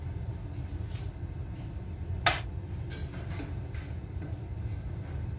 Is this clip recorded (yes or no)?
yes